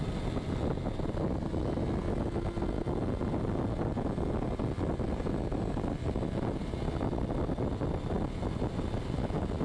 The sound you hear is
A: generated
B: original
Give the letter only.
B